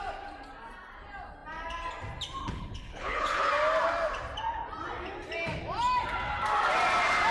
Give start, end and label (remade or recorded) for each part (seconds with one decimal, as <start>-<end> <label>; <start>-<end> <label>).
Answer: 0.0-2.4 recorded; 2.4-3.5 remade; 3.5-7.3 recorded